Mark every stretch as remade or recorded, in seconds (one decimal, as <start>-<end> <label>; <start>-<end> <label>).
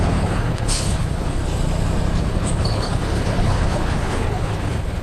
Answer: 0.0-1.4 remade; 1.4-2.2 recorded; 2.2-5.0 remade